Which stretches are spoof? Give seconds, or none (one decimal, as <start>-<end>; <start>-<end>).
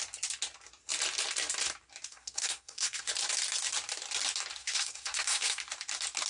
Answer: 2.1-3.1; 4.6-5.6